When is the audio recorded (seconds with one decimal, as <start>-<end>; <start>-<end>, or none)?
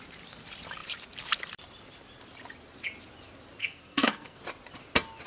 0.0-3.6; 4.4-5.3